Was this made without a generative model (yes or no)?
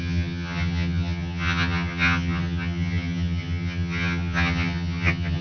no